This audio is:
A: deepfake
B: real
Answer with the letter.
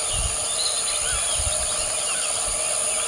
B